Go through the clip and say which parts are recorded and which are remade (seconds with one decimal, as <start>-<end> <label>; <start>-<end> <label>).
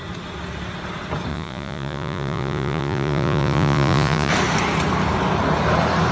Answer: 0.0-1.3 recorded; 1.3-4.3 remade; 4.3-6.1 recorded